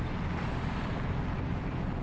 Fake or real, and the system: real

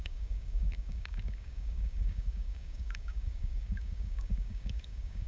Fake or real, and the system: fake, codec, DAC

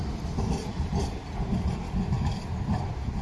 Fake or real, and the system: real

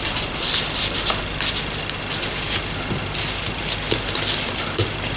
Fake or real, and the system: real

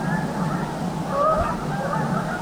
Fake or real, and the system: real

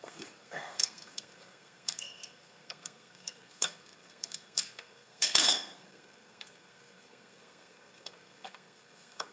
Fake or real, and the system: fake, codec, SNAC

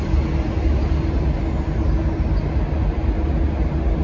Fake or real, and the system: real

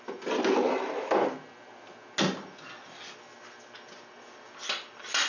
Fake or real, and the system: real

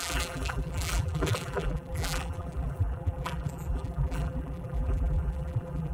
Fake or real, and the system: fake, vocoder, BigVGAN v2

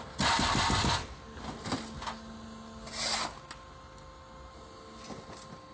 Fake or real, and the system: real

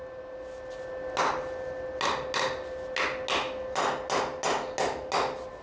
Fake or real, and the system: real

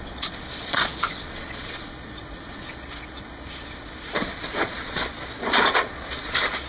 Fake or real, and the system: fake, vocoder, Vocos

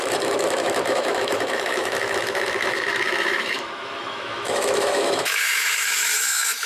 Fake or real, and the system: fake, autoencoder, DAC-VAE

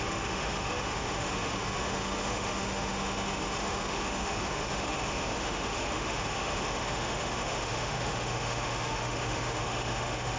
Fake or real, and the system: fake, autoencoder, DAC-VAE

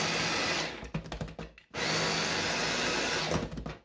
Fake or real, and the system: real